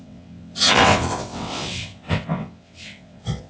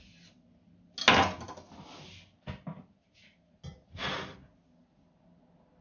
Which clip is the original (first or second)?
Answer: second